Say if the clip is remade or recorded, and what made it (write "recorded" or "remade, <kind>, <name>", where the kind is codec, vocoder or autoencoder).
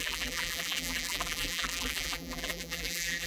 remade, vocoder, BigVGAN v2